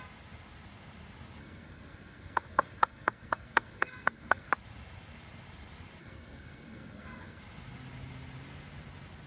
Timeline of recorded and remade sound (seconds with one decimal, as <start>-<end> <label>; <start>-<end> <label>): 0.0-1.4 recorded; 1.4-4.5 remade; 4.5-6.0 recorded; 6.0-7.4 remade; 7.4-9.3 recorded